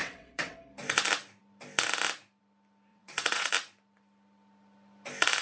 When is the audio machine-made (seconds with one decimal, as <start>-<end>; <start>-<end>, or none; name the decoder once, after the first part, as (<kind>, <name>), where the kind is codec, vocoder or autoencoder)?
0.0-0.6 (vocoder, WaveNeXt); 2.9-3.5